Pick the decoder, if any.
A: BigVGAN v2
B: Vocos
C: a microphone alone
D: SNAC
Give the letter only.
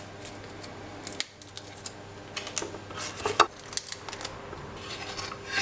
C